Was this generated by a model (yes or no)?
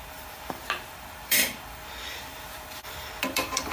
yes